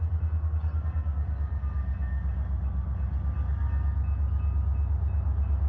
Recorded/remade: recorded